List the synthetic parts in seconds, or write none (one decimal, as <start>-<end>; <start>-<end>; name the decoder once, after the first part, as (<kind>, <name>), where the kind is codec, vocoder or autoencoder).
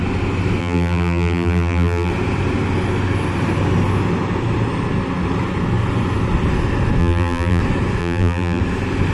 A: 0.6-2.1 (vocoder, BigVGAN v2); 7.0-7.6; 8.0-8.6